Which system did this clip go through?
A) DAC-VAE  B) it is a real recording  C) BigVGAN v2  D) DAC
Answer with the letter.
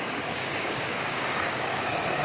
D